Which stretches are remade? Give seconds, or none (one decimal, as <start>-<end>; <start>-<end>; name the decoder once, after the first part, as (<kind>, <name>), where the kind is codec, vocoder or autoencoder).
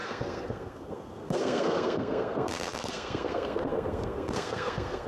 0.0-5.1 (codec, SNAC)